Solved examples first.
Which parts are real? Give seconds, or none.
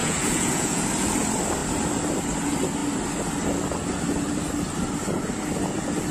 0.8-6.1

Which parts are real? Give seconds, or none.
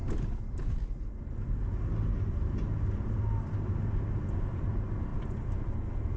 0.0-6.2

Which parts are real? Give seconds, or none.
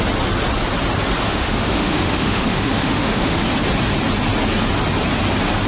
0.0-1.2; 3.4-5.7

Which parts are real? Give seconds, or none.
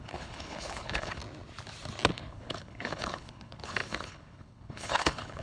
1.2-2.1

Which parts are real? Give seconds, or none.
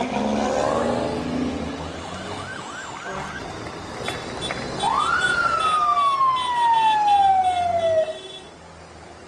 0.0-9.3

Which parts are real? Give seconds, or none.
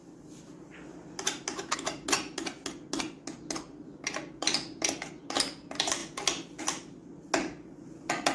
0.0-8.3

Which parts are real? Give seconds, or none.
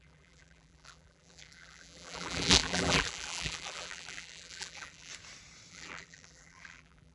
5.1-5.7